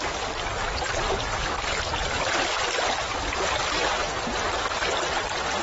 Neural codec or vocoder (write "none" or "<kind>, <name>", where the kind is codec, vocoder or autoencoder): vocoder, BigVGAN v2